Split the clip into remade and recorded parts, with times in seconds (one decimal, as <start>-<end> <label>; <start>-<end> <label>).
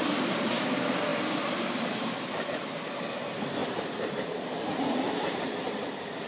0.0-3.6 recorded; 3.6-6.3 remade